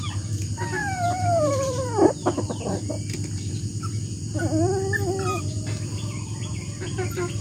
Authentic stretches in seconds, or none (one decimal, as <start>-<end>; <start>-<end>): 0.0-0.8; 2.8-7.4

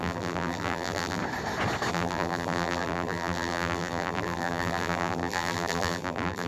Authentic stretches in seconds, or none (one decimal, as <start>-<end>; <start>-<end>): 1.2-1.9

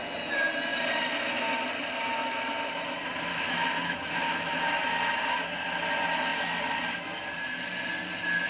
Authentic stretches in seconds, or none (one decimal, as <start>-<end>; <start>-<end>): 0.0-3.3; 4.6-8.5

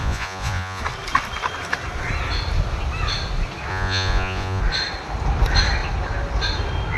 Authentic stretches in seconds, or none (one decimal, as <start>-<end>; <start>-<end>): 0.8-3.7; 4.6-7.0

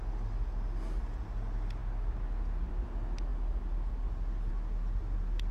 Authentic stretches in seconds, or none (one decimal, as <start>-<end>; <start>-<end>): 0.0-5.5

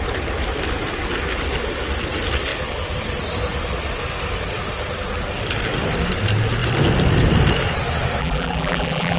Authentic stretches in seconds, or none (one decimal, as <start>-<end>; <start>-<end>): 0.0-8.2

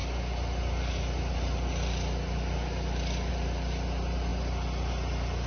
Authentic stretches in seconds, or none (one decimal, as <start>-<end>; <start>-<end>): 0.0-5.5

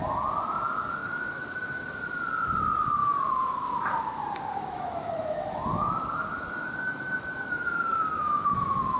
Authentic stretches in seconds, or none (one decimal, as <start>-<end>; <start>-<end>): 0.0-1.0; 1.8-3.0; 3.9-4.6